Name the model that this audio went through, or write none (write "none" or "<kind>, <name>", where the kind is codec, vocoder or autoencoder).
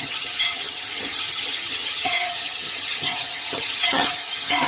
vocoder, HiFi-GAN